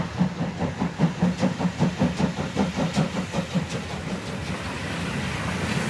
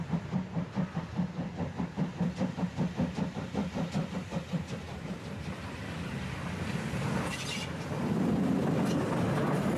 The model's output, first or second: second